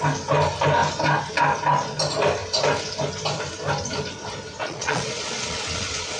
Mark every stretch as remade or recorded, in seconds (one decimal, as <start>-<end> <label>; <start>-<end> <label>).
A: 0.0-4.6 recorded; 4.6-6.2 remade